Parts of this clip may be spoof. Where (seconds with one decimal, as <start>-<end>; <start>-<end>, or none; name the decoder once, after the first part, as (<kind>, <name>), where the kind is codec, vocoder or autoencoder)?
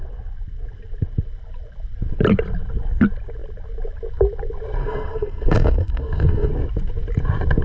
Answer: 4.8-6.5 (codec, SNAC)